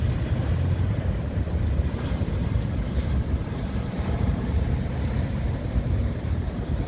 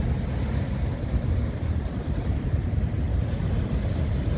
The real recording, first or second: second